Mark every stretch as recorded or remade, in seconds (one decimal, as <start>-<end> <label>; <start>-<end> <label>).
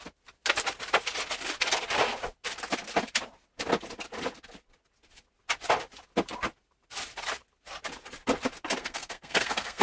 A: 0.0-8.8 recorded; 8.8-9.8 remade